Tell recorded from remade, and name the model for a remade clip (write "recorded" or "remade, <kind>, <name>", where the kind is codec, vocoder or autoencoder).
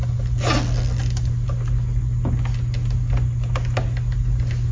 recorded